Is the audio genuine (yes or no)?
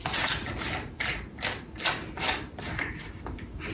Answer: yes